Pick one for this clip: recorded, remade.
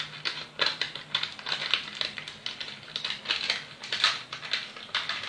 recorded